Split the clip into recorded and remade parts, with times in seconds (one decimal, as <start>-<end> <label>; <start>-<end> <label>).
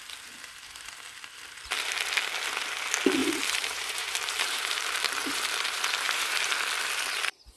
0.0-3.2 recorded; 3.2-6.5 remade; 6.5-7.6 recorded